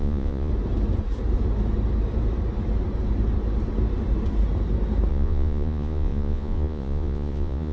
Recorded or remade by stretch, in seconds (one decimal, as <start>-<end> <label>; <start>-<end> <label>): 0.0-0.5 remade; 0.5-5.1 recorded; 5.1-7.7 remade